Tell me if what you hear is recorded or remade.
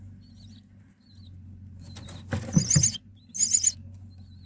recorded